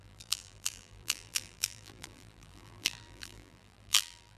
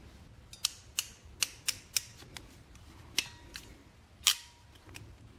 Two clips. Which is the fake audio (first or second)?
first